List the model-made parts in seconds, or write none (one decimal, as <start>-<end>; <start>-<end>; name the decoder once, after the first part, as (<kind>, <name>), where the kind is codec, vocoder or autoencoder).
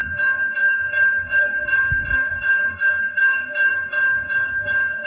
0.0-5.1 (codec, DAC)